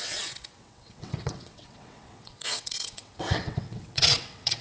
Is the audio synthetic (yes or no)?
yes